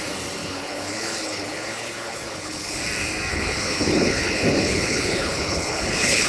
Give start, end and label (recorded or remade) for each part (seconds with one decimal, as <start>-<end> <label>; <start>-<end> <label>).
0.0-0.4 recorded; 0.4-2.8 remade; 2.8-3.3 recorded; 3.3-6.3 remade